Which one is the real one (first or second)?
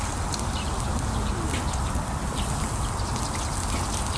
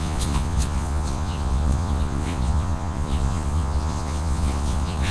first